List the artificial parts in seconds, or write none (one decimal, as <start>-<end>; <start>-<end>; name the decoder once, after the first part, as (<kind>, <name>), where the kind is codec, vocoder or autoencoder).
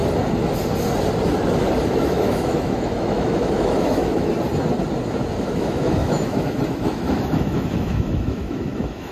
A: 1.9-4.3 (autoencoder, DAC-VAE); 5.4-9.1